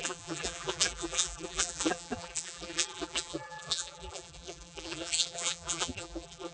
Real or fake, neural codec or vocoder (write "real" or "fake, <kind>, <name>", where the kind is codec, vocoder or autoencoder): fake, vocoder, BigVGAN v2